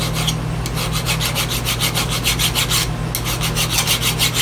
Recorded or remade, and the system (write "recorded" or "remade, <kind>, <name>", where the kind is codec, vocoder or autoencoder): recorded